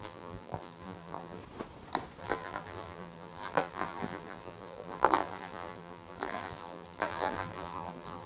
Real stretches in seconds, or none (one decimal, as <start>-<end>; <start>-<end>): 1.4-2.2